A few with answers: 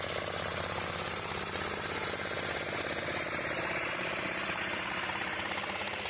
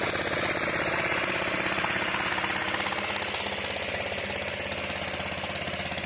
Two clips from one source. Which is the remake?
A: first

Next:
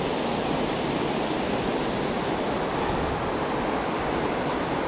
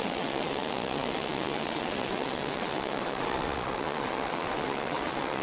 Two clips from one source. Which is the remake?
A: second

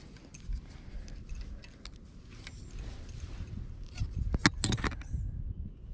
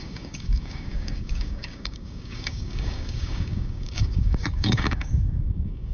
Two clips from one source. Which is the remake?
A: second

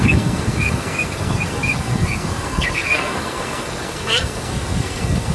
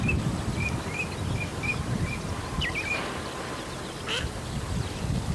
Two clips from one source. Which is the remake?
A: first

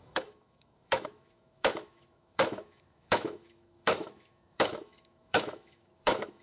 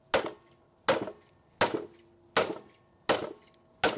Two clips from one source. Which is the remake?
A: first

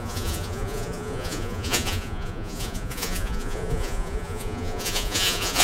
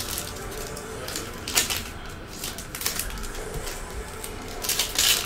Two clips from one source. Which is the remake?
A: first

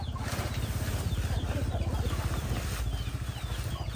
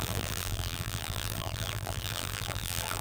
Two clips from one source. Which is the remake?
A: second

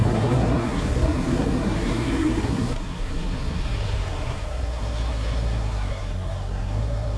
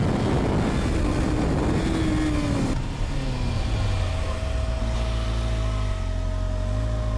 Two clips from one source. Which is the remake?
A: first